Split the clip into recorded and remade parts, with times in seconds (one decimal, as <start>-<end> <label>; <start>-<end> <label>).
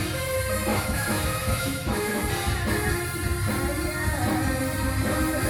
0.0-0.7 recorded; 0.7-2.2 remade; 2.2-5.5 recorded